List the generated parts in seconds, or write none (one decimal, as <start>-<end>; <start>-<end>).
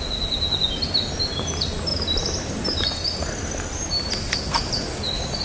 none